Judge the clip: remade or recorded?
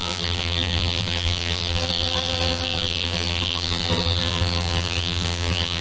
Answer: remade